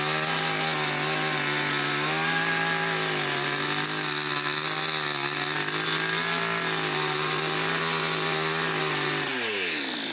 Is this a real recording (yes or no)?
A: yes